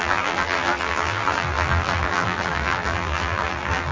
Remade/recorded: remade